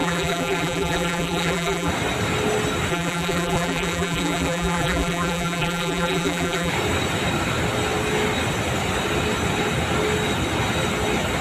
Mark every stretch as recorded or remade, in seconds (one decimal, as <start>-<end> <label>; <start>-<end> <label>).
0.0-1.9 remade; 1.9-2.9 recorded; 2.9-6.7 remade; 6.7-11.4 recorded